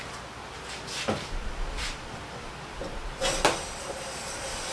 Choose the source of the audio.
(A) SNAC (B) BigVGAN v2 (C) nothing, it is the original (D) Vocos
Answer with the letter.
C